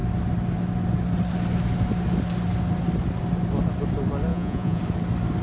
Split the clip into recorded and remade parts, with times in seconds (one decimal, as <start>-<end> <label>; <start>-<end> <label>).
0.0-4.3 recorded; 4.3-4.8 remade; 4.8-5.4 recorded

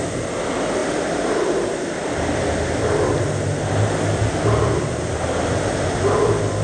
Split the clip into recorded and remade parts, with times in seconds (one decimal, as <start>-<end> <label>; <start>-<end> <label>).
0.0-6.6 recorded

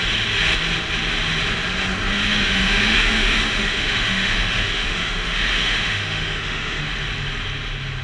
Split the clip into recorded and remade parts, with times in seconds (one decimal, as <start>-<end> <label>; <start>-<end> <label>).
0.0-2.2 recorded; 2.2-6.8 remade; 6.8-8.0 recorded

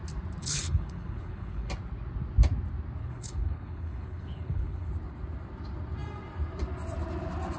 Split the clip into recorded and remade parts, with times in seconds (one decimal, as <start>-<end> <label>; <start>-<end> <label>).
0.0-0.4 recorded; 0.4-1.7 remade; 1.7-3.0 recorded; 3.0-4.9 remade; 4.9-7.6 recorded